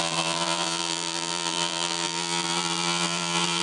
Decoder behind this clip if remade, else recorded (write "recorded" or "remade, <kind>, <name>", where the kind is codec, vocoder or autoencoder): remade, vocoder, BigVGAN v2